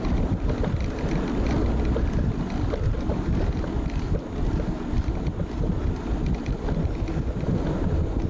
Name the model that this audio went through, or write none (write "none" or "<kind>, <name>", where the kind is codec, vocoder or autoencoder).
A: none